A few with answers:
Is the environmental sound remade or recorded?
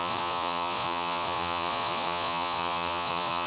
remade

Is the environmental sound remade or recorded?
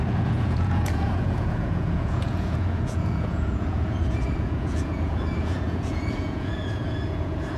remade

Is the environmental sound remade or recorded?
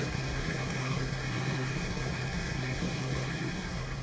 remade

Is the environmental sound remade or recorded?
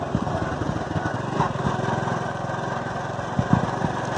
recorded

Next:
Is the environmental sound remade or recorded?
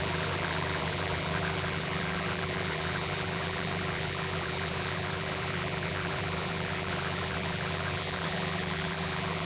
remade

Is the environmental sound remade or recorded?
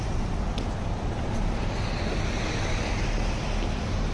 recorded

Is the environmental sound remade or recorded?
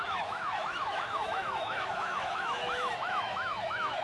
remade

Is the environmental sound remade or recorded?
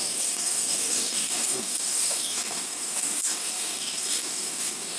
remade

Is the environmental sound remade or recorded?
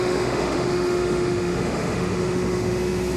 remade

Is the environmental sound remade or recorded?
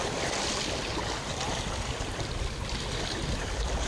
recorded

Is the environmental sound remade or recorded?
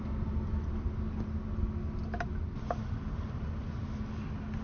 recorded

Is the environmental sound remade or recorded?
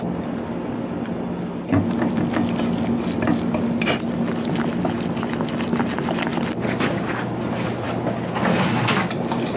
recorded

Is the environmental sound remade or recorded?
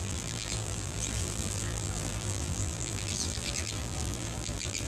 remade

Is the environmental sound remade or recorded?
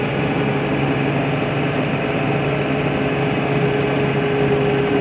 recorded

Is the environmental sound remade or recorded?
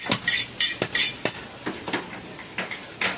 recorded